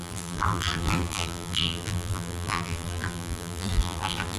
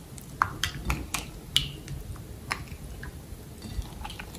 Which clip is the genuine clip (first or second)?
second